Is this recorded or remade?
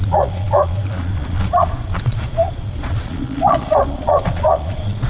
remade